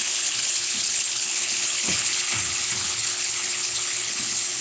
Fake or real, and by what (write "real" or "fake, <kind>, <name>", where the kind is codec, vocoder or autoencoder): fake, codec, HILCodec